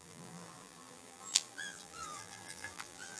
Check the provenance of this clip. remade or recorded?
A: remade